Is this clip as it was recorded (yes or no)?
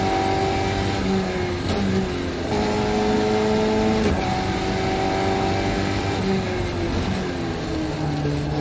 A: yes